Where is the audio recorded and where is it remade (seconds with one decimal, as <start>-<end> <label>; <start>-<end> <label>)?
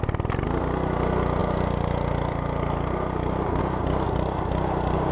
0.0-1.4 recorded; 1.4-3.6 remade; 3.6-5.1 recorded